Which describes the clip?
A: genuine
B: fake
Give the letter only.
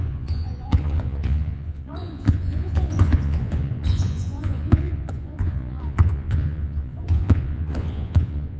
B